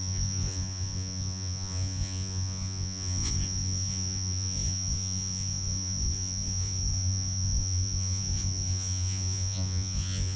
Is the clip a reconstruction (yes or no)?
yes